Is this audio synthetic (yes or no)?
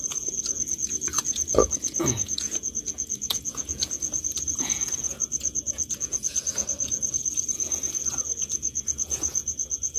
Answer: yes